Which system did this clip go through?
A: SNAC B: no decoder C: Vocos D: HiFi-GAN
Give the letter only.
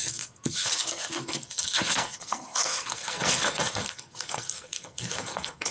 A